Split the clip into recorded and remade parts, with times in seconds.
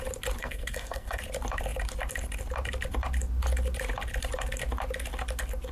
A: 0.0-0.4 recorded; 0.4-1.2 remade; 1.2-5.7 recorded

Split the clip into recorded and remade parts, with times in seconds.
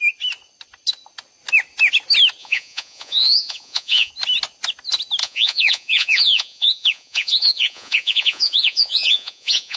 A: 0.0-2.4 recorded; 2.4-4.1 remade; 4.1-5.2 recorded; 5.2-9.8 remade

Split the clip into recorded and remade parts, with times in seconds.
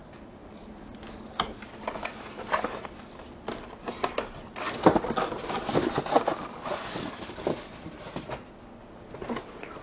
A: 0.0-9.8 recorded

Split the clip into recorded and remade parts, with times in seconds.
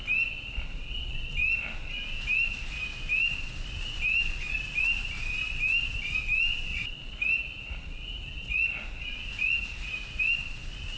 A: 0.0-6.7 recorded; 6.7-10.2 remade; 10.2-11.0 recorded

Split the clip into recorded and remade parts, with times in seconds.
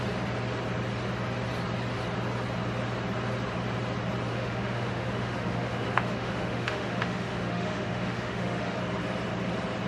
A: 0.0-4.3 recorded; 4.3-8.8 remade; 8.8-9.9 recorded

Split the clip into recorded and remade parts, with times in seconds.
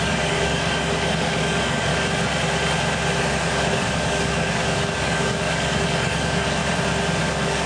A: 0.0-1.9 remade; 1.9-3.2 recorded; 3.2-6.6 remade; 6.6-7.2 recorded; 7.2-7.7 remade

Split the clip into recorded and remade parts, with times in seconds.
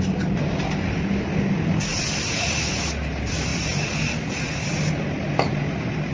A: 0.0-6.1 recorded